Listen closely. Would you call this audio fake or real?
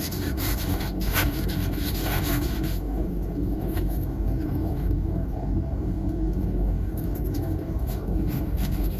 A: fake